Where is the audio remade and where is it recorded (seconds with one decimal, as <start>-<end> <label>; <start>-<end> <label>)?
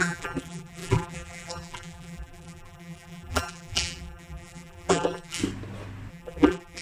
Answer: 0.0-5.4 remade; 5.4-6.1 recorded; 6.1-6.8 remade